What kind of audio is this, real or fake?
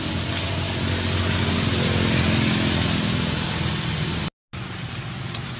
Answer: real